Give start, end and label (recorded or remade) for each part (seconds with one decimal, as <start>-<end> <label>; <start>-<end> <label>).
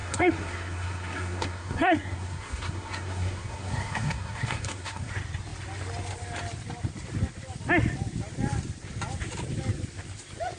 0.0-5.1 remade; 5.1-10.6 recorded